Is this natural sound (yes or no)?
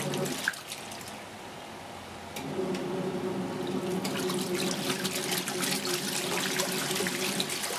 yes